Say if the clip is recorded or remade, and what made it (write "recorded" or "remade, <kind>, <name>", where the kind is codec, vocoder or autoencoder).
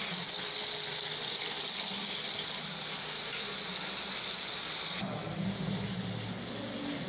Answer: recorded